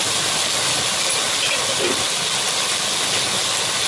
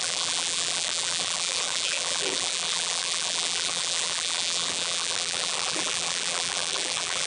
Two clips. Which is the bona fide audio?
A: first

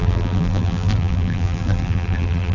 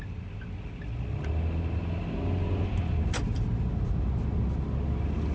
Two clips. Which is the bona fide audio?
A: second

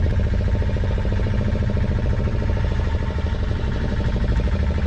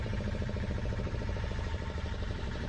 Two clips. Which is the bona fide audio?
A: first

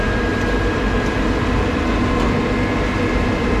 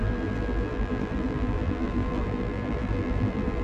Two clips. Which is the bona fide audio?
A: first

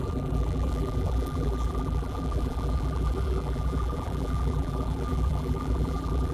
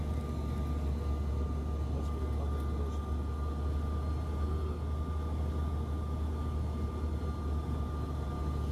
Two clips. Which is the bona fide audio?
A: second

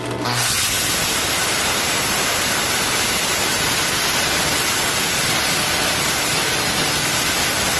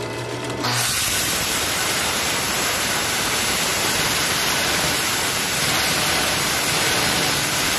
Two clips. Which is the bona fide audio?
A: first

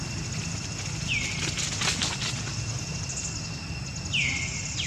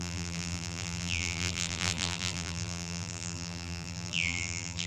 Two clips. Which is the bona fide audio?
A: first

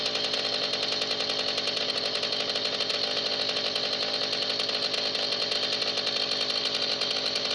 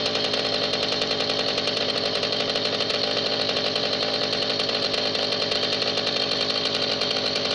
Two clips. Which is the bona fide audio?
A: first